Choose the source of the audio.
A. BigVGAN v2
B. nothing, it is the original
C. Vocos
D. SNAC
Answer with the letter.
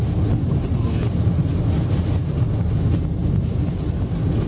B